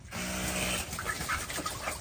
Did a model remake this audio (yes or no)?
no